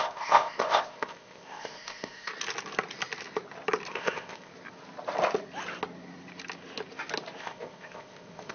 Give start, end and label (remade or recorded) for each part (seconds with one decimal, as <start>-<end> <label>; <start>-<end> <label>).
0.0-2.3 remade; 2.3-3.9 recorded; 3.9-4.5 remade; 4.5-7.4 recorded; 7.4-8.5 remade